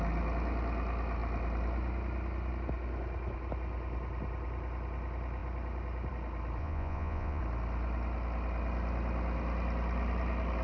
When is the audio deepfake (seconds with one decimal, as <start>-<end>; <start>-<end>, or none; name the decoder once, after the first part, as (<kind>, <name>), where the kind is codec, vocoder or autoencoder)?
6.6-7.4 (vocoder, Vocos)